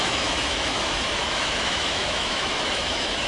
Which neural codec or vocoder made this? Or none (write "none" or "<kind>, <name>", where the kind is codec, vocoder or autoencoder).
autoencoder, DAC-VAE